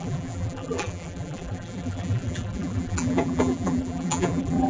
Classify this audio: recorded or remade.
remade